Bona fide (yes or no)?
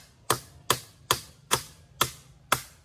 yes